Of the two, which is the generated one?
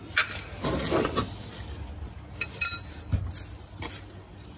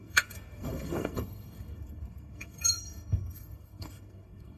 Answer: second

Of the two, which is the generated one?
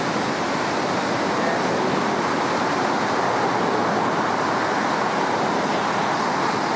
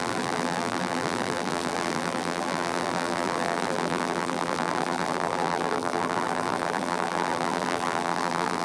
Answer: second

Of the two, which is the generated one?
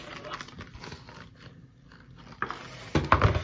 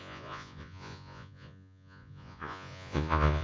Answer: second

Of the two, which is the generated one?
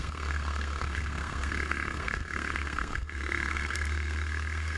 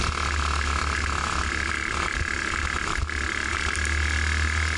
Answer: first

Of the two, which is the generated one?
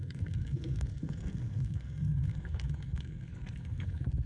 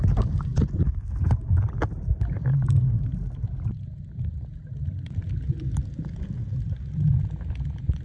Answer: first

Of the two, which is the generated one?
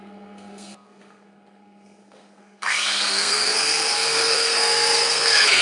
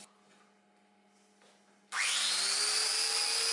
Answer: first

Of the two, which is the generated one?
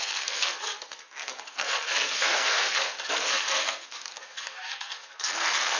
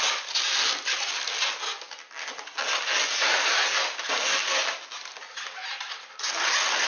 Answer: first